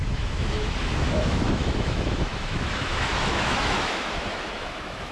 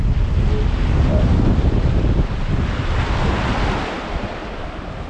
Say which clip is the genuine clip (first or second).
second